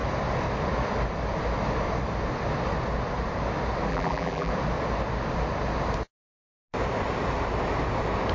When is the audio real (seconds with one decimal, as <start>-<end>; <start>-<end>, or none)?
0.0-3.9; 4.5-8.3